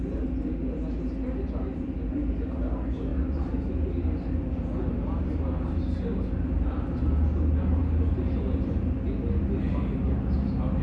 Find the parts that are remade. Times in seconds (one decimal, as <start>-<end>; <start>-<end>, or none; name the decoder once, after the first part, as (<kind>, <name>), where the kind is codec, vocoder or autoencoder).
none